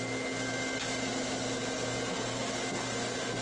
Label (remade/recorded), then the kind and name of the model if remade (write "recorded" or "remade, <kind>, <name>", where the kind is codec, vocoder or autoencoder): recorded